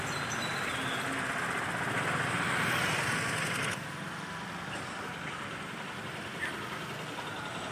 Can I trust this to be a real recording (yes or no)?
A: yes